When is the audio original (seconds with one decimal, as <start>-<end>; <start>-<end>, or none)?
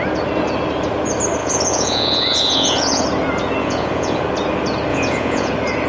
0.0-1.4; 3.0-3.6; 4.2-4.9; 5.5-5.9